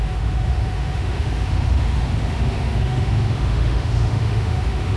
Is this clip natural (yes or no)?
no